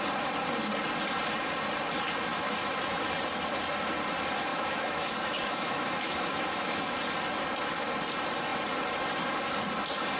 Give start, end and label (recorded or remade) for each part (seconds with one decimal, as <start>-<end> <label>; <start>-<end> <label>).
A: 0.0-2.3 recorded; 2.3-3.1 remade; 3.1-4.5 recorded; 4.5-6.9 remade; 6.9-10.2 recorded